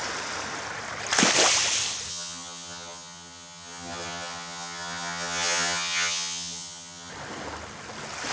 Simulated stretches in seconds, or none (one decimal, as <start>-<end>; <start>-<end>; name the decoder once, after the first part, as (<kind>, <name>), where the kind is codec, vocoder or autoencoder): 2.1-7.1 (vocoder, HiFi-GAN)